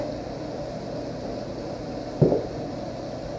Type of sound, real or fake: real